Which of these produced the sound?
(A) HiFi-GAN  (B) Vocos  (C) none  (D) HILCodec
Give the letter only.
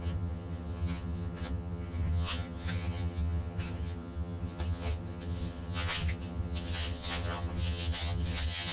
A